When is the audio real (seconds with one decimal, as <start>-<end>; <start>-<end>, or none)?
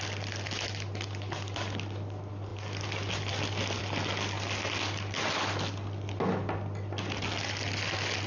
0.0-8.3